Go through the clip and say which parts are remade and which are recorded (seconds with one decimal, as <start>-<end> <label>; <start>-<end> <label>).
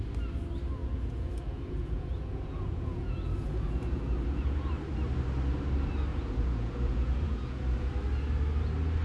0.0-0.8 recorded; 0.8-4.7 remade; 4.7-6.1 recorded; 6.1-7.9 remade; 7.9-9.0 recorded